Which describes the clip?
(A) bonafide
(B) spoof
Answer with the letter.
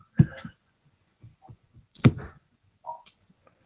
B